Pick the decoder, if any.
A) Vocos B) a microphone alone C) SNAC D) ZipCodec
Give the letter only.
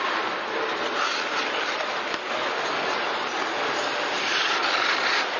B